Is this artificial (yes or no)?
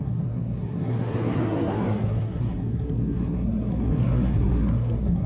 yes